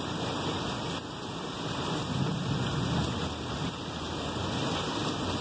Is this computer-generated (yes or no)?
no